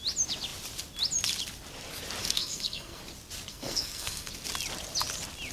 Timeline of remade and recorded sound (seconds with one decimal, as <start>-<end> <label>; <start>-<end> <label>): 0.0-2.2 recorded; 2.2-3.0 remade; 3.0-3.5 recorded; 3.5-4.3 remade; 4.3-5.5 recorded